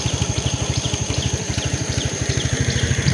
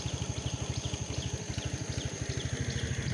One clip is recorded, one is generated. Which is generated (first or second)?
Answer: first